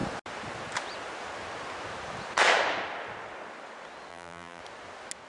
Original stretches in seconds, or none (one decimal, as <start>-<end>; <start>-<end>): 0.0-4.1; 4.6-5.3

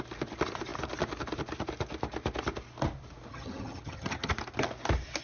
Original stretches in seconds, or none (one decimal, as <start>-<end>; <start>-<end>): 0.0-3.3; 4.3-5.2

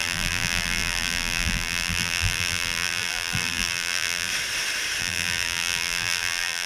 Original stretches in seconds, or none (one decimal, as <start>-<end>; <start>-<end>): 4.3-5.0

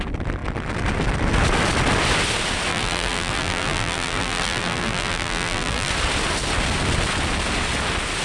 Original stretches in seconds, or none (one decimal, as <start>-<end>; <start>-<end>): 0.0-2.7; 5.9-8.2

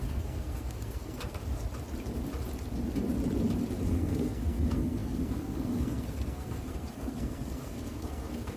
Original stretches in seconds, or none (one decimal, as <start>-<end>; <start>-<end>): 1.4-3.8

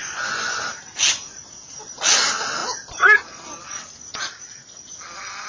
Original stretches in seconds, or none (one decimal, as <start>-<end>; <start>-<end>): 0.6-5.5

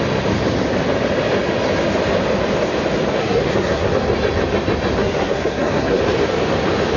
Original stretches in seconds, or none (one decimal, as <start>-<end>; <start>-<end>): 0.0-3.2; 3.9-5.0; 6.0-7.0